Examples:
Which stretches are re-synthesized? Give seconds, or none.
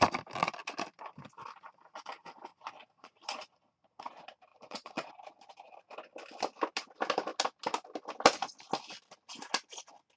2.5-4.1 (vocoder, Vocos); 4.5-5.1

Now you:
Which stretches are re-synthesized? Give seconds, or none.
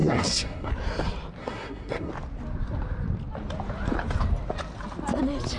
0.0-0.7 (codec, SNAC); 1.4-2.1